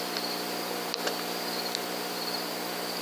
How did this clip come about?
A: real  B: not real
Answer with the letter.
A